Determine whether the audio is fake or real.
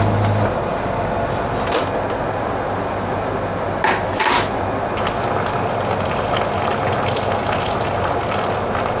real